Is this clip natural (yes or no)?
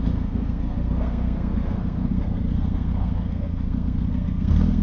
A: no